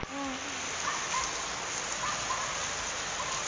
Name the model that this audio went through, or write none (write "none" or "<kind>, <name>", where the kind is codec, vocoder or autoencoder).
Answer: none